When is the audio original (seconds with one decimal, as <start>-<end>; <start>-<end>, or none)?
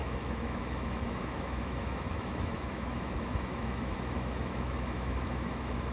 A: none